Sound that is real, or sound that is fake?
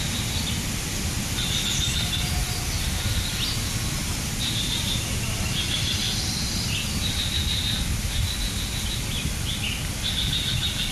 real